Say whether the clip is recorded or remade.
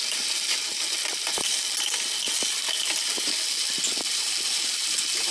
recorded